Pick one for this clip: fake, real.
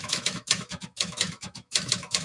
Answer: fake